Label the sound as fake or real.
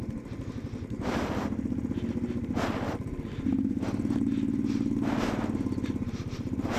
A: real